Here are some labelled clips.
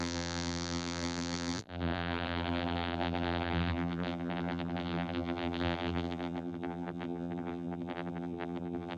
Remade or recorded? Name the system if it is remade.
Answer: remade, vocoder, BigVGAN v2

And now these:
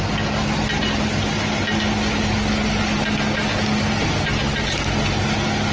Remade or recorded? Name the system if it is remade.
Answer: recorded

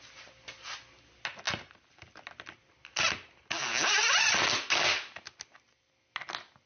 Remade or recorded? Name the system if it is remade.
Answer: recorded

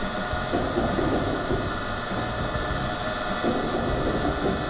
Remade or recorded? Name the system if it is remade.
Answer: recorded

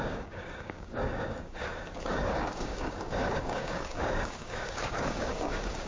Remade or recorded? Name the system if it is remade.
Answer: remade, codec, DAC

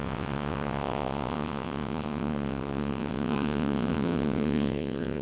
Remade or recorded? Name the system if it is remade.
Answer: remade, vocoder, WaveNeXt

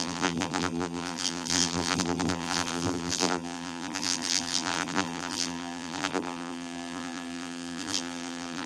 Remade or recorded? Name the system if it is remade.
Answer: remade, vocoder, BigVGAN v2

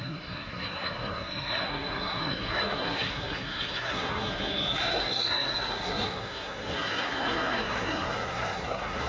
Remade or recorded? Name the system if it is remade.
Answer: remade, codec, SNAC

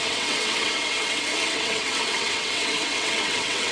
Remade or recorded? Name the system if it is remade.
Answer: remade, vocoder, WaveNeXt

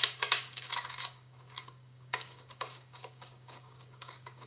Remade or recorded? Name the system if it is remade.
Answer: remade, codec, DAC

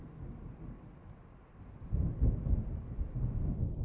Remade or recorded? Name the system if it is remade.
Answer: recorded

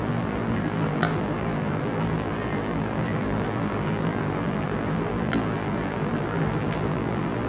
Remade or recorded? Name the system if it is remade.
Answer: remade, vocoder, BigVGAN v2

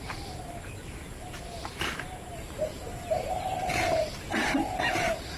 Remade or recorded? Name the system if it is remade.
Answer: remade, vocoder, BigVGAN v2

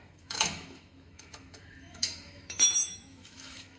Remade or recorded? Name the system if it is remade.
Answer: remade, autoencoder, DAC-VAE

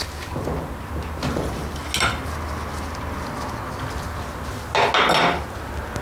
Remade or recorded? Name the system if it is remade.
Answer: recorded